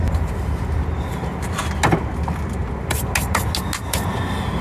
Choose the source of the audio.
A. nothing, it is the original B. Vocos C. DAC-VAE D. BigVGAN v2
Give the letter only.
A